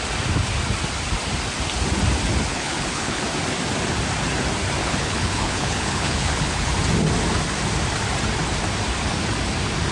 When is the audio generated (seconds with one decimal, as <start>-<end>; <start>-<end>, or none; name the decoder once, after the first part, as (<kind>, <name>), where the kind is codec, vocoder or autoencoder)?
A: 2.5-3.2 (codec, HILCodec); 4.8-6.7